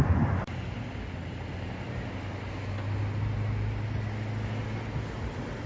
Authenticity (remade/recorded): recorded